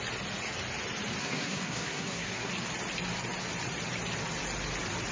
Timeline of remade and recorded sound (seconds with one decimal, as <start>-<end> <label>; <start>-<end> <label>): 0.0-1.2 recorded; 1.2-2.5 remade; 2.5-5.1 recorded